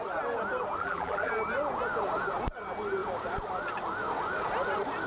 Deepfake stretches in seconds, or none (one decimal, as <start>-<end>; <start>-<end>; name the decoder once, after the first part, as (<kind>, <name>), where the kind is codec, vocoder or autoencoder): 0.8-1.3 (vocoder, BigVGAN v2)